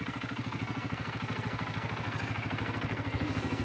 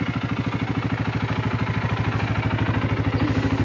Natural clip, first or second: second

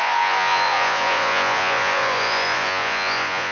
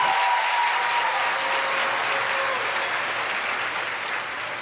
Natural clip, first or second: second